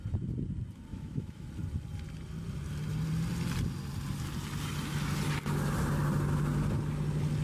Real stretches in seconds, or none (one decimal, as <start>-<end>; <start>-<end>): 0.0-0.9; 1.5-7.4